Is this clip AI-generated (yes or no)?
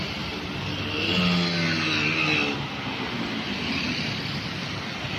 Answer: no